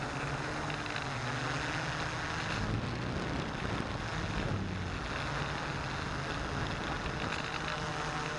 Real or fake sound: real